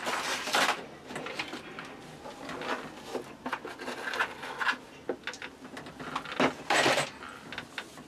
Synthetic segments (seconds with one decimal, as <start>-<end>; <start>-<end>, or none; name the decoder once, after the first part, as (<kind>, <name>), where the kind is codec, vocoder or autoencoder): none